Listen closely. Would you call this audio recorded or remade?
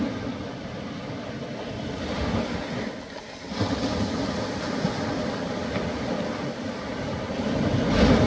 recorded